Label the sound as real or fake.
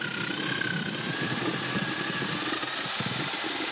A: real